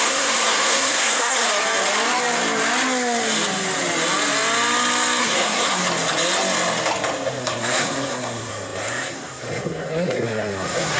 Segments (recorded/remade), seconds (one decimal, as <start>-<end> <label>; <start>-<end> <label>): 0.0-1.5 remade; 1.5-5.2 recorded; 5.2-5.8 remade; 5.8-7.4 recorded; 7.4-11.0 remade